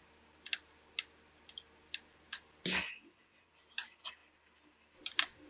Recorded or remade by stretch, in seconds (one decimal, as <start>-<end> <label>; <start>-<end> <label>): 0.0-2.8 recorded; 2.8-3.5 remade; 3.5-5.5 recorded